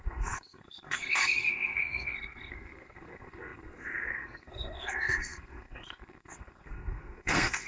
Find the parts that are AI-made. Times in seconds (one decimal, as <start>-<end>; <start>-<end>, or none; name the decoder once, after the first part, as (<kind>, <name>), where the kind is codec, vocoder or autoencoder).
0.0-7.7 (codec, SNAC)

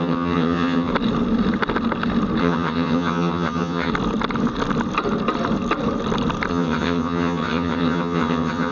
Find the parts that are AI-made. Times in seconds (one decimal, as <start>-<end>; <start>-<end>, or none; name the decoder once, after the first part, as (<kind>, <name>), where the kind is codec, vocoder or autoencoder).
0.0-0.9 (vocoder, HiFi-GAN); 2.4-3.9; 6.5-8.7